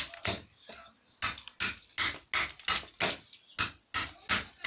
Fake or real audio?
real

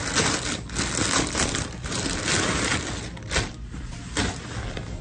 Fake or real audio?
real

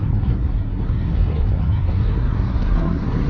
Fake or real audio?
fake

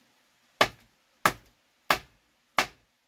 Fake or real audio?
real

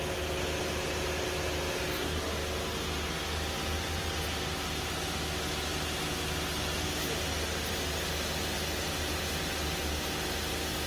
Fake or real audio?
real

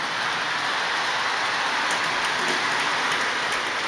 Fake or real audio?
real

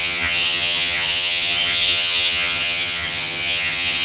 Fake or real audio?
fake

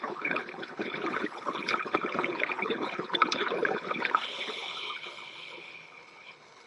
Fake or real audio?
fake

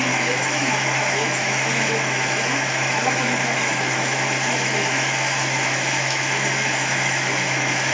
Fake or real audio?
fake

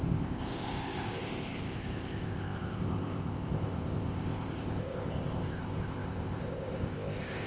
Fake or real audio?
fake